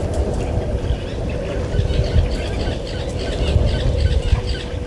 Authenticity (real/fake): real